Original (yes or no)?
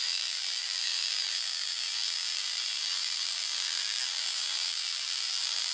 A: no